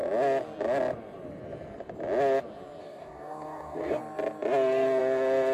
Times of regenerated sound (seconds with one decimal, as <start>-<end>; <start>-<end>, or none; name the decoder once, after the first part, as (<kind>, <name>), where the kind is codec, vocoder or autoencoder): 2.8-4.0 (codec, DAC)